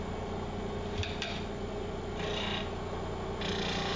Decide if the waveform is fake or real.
real